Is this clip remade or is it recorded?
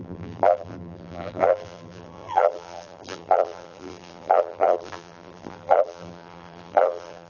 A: remade